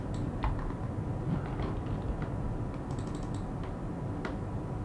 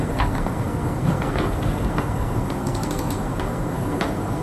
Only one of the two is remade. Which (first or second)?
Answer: second